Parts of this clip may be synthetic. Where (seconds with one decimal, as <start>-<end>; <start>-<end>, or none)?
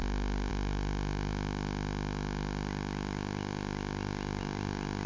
none